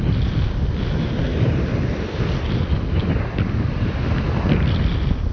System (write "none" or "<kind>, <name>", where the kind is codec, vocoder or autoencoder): none